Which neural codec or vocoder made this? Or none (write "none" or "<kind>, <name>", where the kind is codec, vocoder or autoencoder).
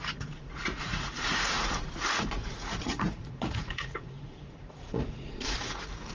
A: vocoder, Vocos